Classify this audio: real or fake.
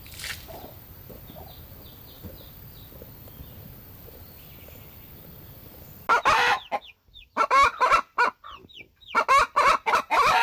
real